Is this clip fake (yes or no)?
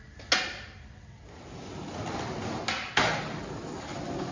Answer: no